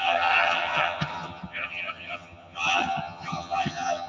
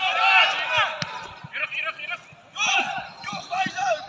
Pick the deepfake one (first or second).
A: first